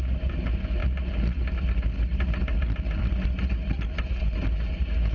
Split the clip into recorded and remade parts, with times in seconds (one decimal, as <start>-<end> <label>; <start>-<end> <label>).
0.0-5.1 recorded